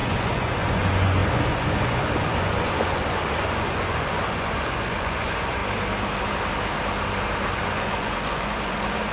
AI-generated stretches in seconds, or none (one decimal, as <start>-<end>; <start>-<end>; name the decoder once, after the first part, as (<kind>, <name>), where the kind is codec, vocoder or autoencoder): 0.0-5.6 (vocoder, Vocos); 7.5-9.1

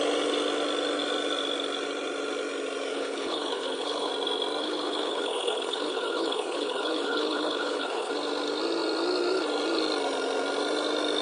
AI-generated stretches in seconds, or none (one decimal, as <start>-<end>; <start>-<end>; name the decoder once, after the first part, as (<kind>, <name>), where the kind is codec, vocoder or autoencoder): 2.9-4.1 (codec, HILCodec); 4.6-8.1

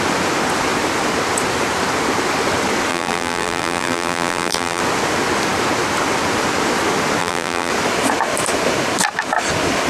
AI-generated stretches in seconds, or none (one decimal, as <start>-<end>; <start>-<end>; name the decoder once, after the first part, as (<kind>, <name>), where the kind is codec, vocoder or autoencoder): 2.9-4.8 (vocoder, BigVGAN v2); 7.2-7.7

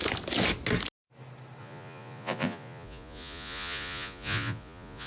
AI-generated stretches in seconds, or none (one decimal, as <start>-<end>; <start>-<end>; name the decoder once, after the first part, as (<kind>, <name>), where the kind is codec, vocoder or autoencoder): 1.6-5.1 (vocoder, Vocos)

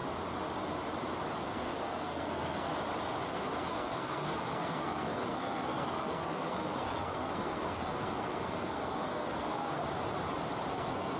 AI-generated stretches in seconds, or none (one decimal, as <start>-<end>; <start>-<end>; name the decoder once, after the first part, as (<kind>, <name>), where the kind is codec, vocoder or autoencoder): 1.4-2.7 (codec, SNAC); 3.3-9.8; 10.7-11.2